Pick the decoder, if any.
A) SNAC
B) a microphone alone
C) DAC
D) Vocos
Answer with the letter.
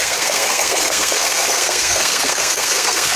A